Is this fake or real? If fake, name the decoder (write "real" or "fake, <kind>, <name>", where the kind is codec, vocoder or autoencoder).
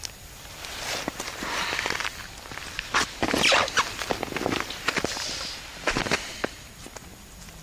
fake, vocoder, BigVGAN v2